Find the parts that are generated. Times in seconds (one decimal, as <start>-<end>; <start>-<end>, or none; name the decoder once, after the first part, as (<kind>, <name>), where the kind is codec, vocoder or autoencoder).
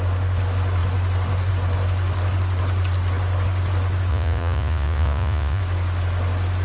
4.1-5.6 (vocoder, Vocos)